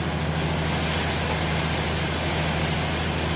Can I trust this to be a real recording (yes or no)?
yes